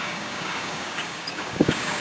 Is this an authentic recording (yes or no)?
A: no